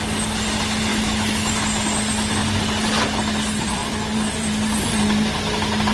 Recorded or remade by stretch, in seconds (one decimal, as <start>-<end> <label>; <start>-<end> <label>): 0.0-0.9 recorded; 0.9-1.5 remade; 1.5-5.9 recorded